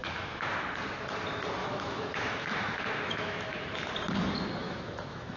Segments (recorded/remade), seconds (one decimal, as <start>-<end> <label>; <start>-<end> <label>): 0.0-0.6 remade; 0.6-1.6 recorded; 1.6-3.9 remade; 3.9-4.6 recorded; 4.6-5.4 remade